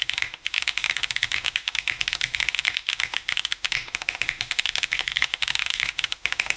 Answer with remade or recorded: remade